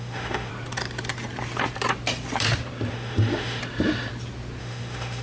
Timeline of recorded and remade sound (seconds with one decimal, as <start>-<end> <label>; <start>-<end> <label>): 0.0-0.5 remade; 0.5-2.9 recorded; 2.9-3.6 remade; 3.6-4.6 recorded; 4.6-5.2 remade